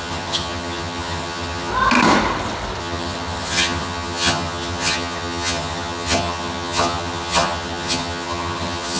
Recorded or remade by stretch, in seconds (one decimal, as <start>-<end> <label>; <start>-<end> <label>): 0.0-1.7 remade; 1.7-2.8 recorded; 2.8-9.0 remade